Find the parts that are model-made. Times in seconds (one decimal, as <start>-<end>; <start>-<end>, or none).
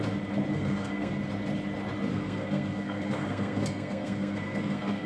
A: 0.5-1.2; 2.1-5.1